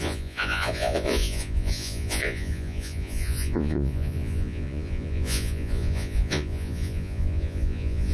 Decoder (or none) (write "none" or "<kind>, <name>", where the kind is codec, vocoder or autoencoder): vocoder, Vocos